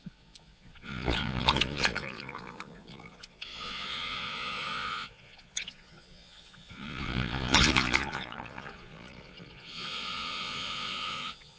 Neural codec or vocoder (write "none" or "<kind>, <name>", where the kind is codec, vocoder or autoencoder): vocoder, Vocos